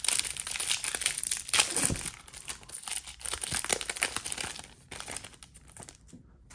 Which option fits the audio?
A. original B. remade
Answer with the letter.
A